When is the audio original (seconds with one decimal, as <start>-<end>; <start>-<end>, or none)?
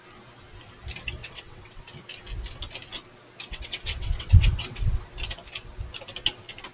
0.0-1.2; 1.8-3.5; 5.0-6.7